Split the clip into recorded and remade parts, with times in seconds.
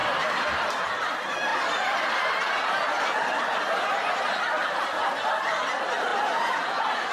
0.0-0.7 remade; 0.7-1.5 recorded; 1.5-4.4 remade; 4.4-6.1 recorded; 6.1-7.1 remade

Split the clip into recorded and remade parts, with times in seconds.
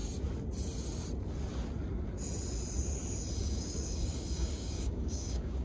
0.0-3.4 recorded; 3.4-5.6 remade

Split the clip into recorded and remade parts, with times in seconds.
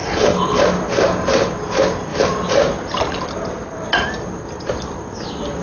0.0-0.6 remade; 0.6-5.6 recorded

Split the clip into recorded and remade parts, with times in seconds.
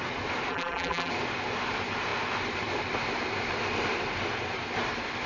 0.0-0.5 recorded; 0.5-1.1 remade; 1.1-5.3 recorded